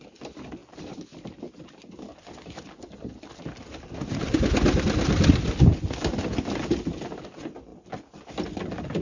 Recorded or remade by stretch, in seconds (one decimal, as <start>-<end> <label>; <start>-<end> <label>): 0.0-9.0 recorded